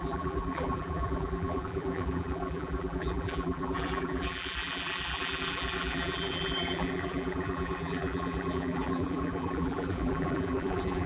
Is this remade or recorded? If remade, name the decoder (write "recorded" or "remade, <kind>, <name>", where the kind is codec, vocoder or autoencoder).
remade, vocoder, BigVGAN v2